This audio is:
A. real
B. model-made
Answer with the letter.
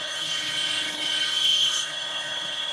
B